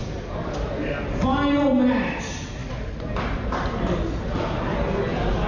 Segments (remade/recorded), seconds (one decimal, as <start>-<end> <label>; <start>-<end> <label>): 0.0-5.5 recorded